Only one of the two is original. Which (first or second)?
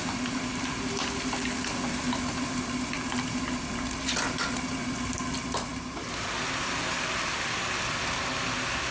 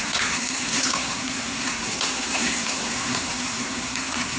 first